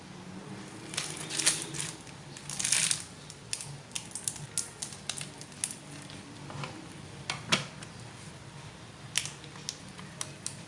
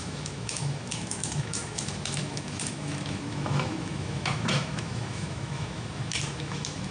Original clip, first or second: first